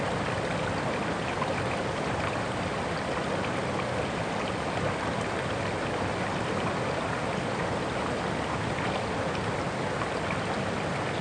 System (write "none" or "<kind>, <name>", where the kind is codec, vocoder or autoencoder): none